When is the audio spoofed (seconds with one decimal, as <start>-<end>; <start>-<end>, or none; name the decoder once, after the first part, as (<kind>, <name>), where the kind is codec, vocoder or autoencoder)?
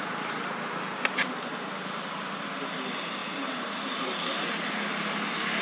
none